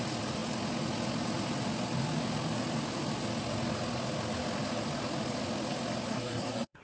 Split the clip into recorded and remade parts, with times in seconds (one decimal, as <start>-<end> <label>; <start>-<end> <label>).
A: 0.0-6.1 recorded; 6.1-6.8 remade